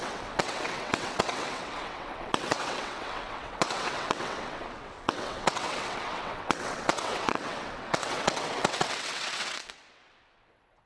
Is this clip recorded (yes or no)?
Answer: no